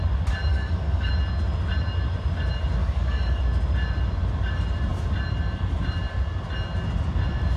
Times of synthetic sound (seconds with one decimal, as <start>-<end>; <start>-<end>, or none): 0.5-1.1; 2.8-3.4